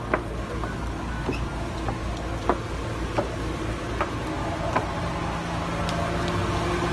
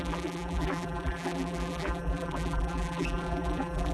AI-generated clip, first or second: second